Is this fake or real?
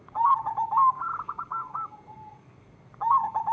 fake